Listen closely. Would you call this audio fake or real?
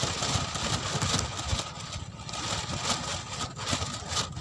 real